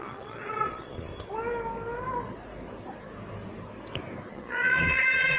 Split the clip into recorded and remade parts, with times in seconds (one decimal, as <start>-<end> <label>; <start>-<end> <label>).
0.0-1.1 remade; 1.1-4.3 recorded; 4.3-5.4 remade